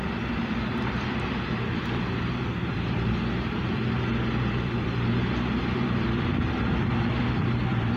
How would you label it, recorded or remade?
remade